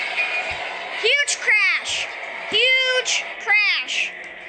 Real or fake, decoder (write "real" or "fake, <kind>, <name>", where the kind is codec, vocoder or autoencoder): real